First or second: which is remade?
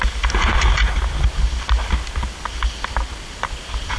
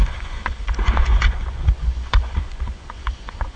second